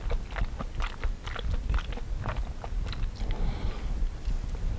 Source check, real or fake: real